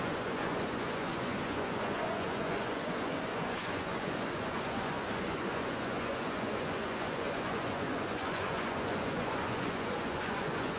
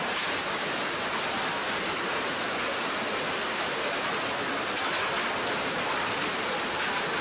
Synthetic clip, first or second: first